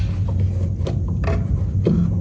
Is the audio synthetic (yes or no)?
no